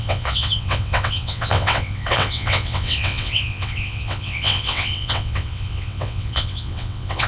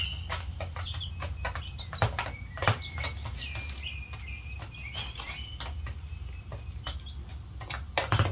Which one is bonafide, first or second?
second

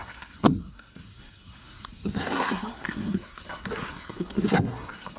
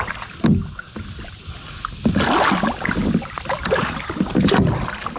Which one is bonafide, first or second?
second